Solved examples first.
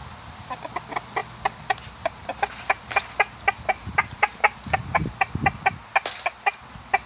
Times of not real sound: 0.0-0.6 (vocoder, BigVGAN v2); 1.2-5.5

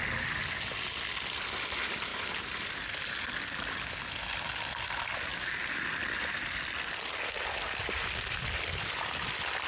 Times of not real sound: none